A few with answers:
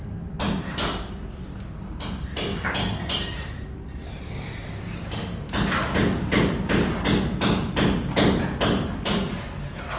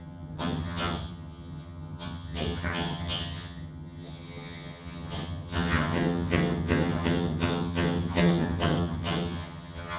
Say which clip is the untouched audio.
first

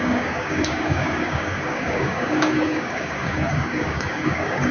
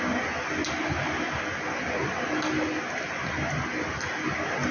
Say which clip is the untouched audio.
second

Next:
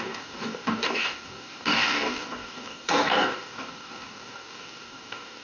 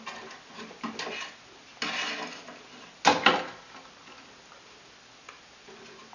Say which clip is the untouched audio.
second